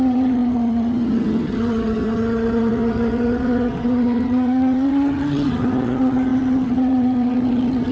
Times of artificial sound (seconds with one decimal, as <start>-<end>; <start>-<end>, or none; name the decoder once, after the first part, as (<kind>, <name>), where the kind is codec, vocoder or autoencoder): 0.0-7.9 (vocoder, HiFi-GAN)